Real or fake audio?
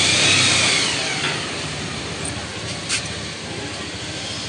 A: fake